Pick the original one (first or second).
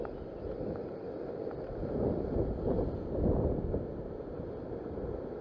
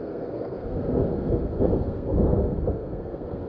first